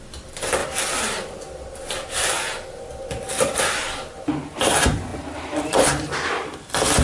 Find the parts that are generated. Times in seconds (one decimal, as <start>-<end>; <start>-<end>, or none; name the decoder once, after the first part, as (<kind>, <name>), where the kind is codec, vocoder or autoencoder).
none